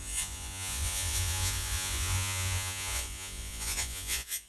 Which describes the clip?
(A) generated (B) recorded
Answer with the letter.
A